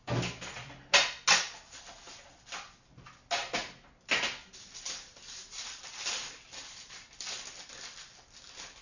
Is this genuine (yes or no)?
yes